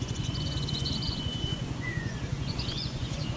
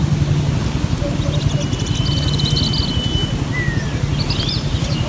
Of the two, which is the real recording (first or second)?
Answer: second